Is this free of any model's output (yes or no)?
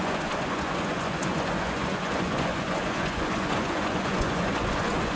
no